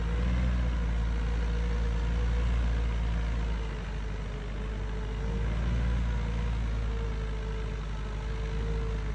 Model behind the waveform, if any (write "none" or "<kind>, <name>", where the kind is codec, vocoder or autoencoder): none